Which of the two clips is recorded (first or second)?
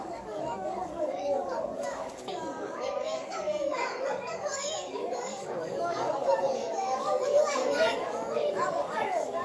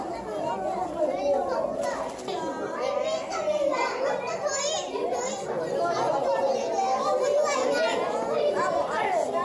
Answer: second